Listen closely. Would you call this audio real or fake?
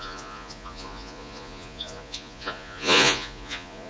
fake